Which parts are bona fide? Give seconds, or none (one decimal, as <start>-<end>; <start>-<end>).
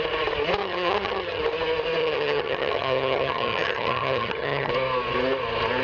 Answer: 0.0-0.6; 1.4-2.0; 4.7-5.8